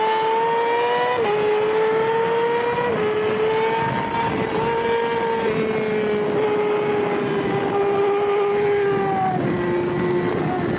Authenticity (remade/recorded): recorded